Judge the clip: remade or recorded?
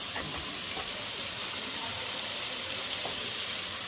remade